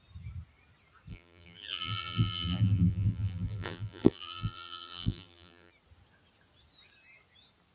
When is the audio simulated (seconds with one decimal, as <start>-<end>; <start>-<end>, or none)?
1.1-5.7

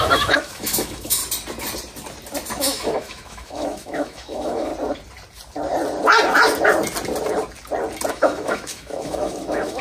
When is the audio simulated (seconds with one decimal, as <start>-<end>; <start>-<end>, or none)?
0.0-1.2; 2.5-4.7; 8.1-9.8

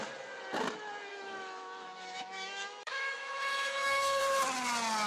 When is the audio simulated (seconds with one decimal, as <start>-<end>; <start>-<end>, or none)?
1.1-4.2